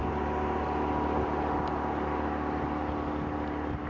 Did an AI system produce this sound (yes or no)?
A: no